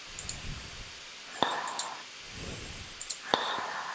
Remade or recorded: recorded